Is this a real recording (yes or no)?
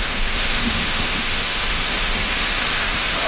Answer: no